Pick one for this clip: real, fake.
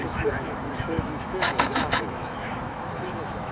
fake